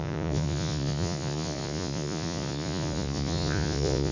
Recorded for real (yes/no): no